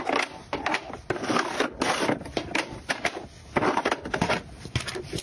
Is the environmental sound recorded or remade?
recorded